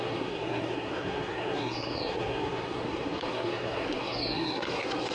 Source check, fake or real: fake